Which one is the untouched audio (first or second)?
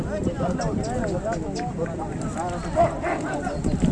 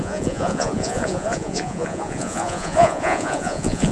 first